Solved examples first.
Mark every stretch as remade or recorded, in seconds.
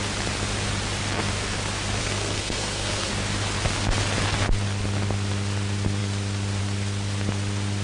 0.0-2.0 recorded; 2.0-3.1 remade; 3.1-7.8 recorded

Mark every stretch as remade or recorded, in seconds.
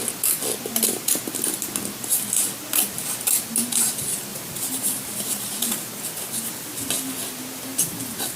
0.0-4.3 recorded; 4.3-6.8 remade; 6.8-7.7 recorded; 7.7-8.4 remade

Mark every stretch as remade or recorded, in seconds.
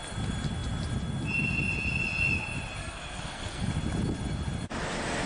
0.0-2.8 recorded; 2.8-3.7 remade; 3.7-5.3 recorded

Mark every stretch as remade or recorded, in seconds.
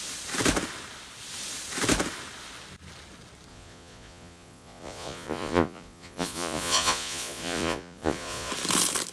0.0-3.5 recorded; 3.5-8.5 remade; 8.5-9.1 recorded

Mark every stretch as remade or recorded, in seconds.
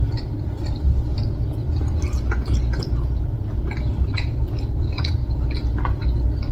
0.0-6.5 recorded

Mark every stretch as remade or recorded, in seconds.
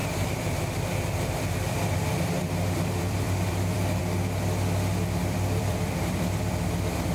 0.0-4.0 remade; 4.0-5.2 recorded; 5.2-7.1 remade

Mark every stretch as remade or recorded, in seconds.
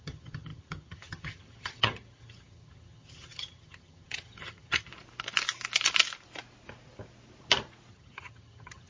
0.0-4.9 remade; 4.9-7.9 recorded; 7.9-8.9 remade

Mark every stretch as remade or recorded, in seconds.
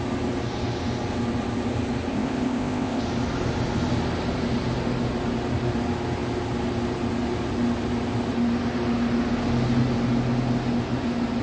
0.0-2.1 recorded; 2.1-3.0 remade; 3.0-11.4 recorded